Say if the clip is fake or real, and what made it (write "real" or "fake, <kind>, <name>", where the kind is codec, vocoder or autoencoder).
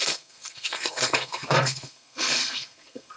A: fake, codec, SNAC